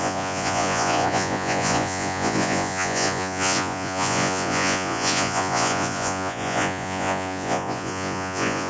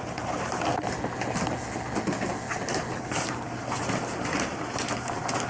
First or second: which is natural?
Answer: second